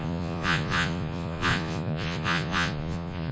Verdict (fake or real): fake